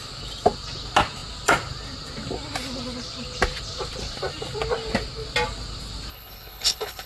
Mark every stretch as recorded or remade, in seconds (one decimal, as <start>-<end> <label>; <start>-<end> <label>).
0.0-6.1 recorded; 6.1-7.1 remade